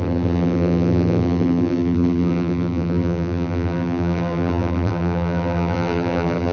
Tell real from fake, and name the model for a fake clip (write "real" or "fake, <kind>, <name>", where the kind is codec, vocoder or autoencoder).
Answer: fake, vocoder, BigVGAN v2